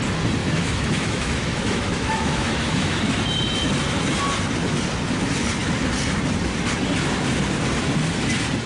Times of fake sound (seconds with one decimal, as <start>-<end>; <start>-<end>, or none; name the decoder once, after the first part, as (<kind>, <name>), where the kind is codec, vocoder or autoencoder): 0.4-3.0 (autoencoder, DAC-VAE)